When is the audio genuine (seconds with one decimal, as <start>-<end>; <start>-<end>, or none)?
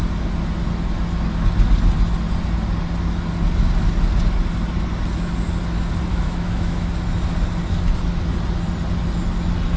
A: 0.0-6.1; 6.9-9.8